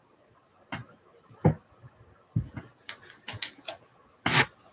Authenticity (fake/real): real